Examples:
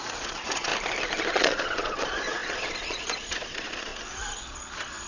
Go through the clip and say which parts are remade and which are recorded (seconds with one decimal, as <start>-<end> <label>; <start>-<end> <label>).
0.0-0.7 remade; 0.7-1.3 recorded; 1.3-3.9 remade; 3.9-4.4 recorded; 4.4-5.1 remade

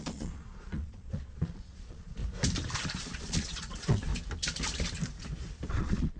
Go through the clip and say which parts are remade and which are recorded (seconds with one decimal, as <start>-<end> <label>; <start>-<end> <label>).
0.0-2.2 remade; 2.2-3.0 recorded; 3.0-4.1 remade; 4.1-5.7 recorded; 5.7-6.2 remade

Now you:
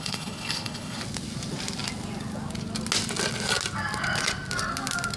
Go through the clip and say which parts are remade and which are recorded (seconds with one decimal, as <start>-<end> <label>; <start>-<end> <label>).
0.0-1.0 remade; 1.0-5.2 recorded

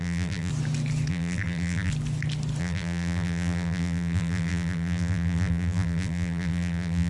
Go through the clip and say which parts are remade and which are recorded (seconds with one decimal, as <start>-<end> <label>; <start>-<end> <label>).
0.0-0.5 remade; 0.5-1.1 recorded; 1.1-1.9 remade; 1.9-2.6 recorded; 2.6-7.1 remade

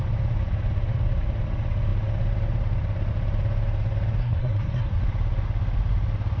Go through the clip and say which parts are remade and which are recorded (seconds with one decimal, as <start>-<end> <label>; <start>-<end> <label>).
0.0-4.2 recorded; 4.2-5.0 remade; 5.0-6.4 recorded